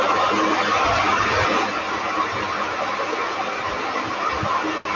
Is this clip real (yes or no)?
yes